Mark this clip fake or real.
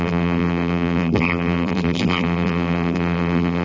fake